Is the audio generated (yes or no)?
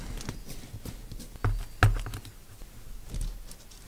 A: no